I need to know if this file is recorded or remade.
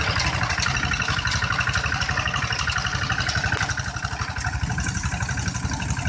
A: recorded